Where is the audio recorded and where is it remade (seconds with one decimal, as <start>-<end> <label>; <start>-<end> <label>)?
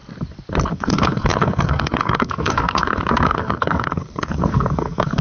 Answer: 0.0-0.7 recorded; 0.7-5.2 remade